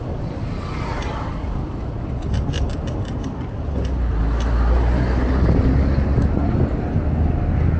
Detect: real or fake real